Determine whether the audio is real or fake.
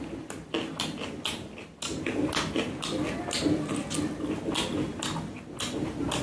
real